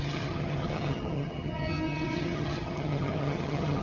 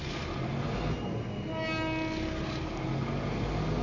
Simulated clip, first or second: first